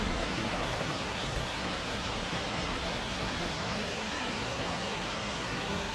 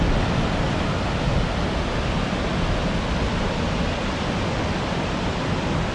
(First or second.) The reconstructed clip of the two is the first